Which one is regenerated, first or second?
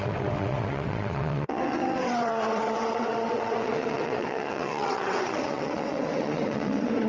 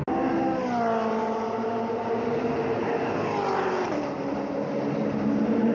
first